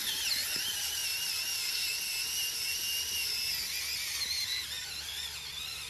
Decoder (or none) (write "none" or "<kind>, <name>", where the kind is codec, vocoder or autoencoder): none